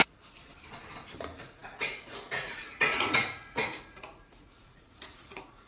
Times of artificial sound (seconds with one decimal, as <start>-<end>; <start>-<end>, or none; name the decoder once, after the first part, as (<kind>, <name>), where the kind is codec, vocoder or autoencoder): 0.0-0.5 (vocoder, Vocos); 1.2-5.7